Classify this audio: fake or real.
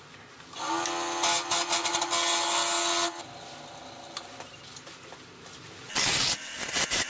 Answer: real